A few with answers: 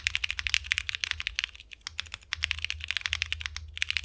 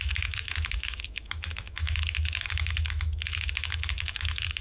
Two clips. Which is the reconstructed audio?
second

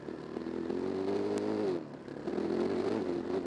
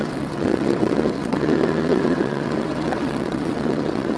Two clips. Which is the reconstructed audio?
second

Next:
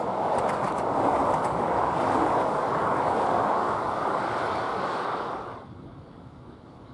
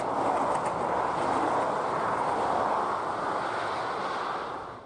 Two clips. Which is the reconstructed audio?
first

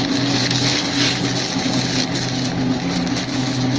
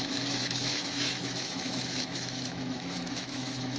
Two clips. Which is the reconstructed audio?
second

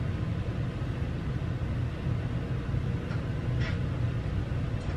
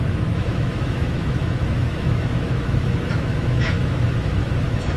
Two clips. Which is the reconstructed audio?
second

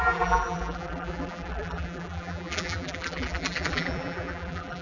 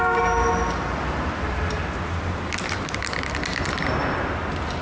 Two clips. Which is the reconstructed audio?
first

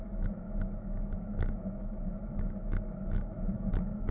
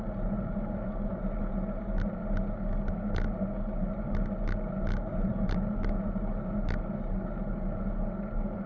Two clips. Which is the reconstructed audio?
first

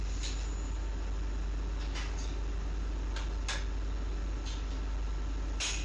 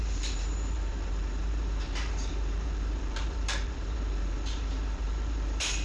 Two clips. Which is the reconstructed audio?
second